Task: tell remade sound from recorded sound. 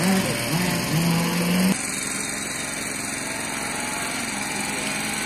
recorded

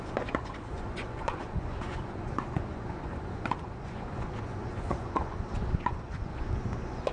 remade